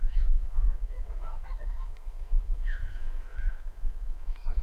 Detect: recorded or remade remade